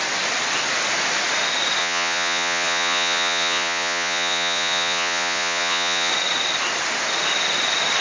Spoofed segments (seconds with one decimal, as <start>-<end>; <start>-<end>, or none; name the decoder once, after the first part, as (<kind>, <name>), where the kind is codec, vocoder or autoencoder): 1.8-6.1 (vocoder, Vocos)